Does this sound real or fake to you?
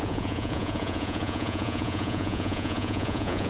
fake